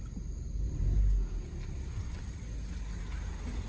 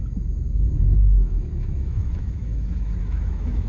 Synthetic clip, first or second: second